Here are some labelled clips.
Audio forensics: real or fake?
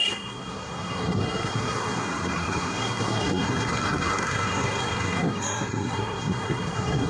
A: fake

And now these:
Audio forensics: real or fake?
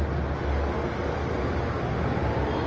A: real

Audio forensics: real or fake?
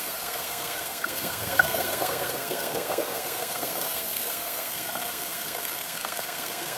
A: fake